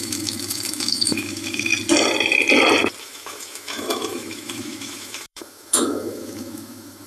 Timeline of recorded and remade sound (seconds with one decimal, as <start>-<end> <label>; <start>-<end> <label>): 0.0-1.7 remade; 1.7-3.0 recorded; 3.0-7.1 remade